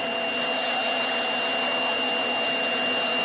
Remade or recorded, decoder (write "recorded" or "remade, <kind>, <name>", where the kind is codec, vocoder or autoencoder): recorded